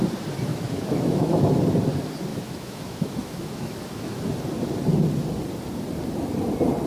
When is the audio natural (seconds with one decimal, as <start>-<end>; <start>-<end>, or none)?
0.0-0.5; 1.6-2.3; 4.2-6.9